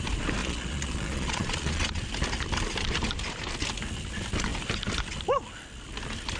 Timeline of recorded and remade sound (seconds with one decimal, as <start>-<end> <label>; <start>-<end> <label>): 0.0-0.4 recorded; 0.4-2.0 remade; 2.0-6.4 recorded